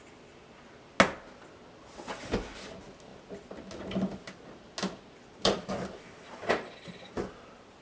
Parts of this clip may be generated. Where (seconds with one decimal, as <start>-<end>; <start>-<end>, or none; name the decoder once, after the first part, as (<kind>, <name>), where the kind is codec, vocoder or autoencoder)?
none